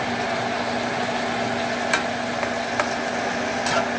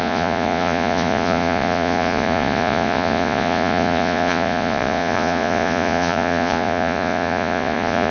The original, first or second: first